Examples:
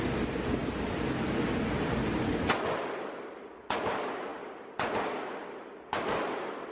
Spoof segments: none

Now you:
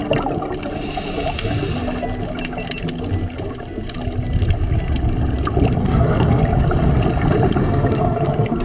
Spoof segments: 5.8-6.4 (codec, SNAC); 7.6-8.6

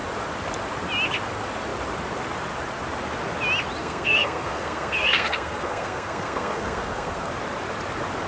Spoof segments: 3.8-7.3 (codec, SNAC)

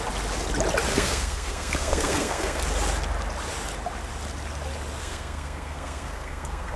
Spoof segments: 0.9-2.6 (codec, SNAC); 5.0-6.8

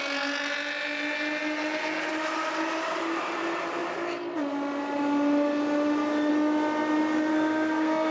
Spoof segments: 7.3-8.1 (codec, SNAC)

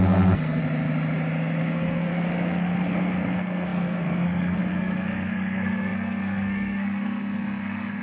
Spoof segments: 0.0-0.6 (codec, SNAC); 1.6-8.0